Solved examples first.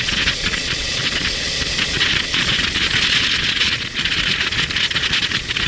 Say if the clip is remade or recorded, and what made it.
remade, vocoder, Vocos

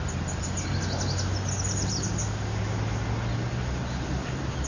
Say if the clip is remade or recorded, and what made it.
recorded